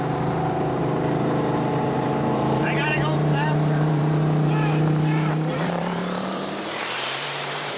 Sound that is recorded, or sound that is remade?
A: remade